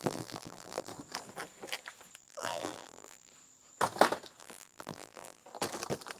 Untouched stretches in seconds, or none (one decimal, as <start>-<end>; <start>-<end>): 0.9-2.2; 3.3-4.4; 5.4-6.2